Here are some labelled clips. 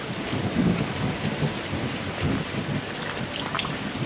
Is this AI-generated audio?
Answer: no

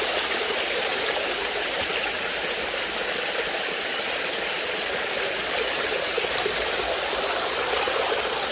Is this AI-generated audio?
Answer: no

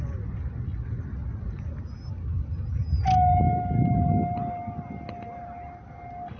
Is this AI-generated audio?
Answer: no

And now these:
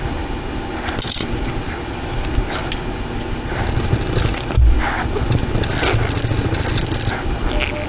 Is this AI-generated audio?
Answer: no